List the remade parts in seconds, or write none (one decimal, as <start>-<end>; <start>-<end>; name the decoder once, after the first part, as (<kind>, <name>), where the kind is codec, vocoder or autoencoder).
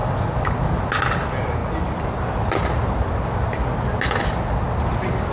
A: none